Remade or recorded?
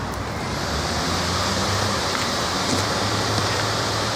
remade